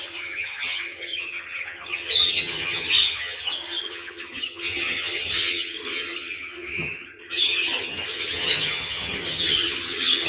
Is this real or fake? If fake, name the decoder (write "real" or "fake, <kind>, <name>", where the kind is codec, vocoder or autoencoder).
fake, vocoder, HiFi-GAN